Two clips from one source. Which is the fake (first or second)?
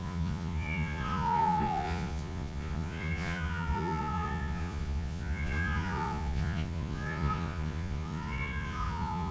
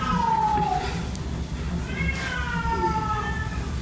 first